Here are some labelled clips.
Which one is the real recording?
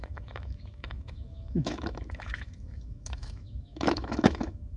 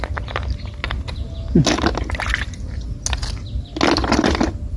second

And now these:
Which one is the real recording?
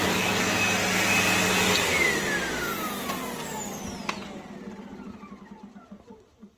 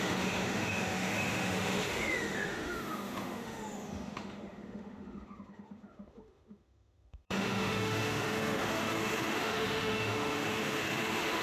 first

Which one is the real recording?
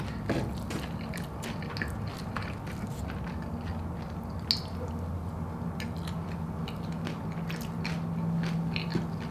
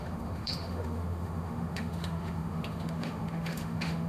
first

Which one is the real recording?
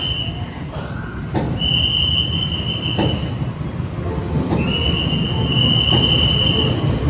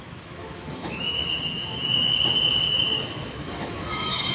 first